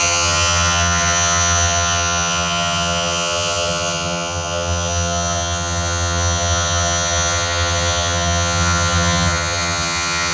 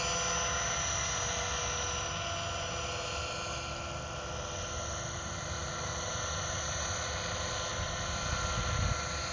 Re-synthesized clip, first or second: first